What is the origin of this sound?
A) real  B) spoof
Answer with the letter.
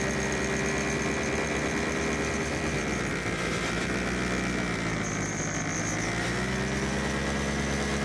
B